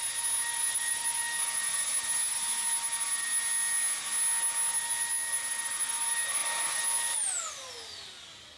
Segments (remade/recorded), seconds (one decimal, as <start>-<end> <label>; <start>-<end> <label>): 0.0-8.6 recorded